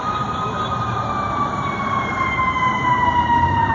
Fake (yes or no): yes